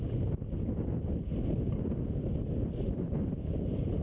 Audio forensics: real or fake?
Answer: real